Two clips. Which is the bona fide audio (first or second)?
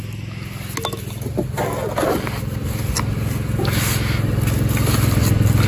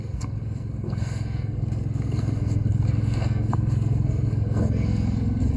first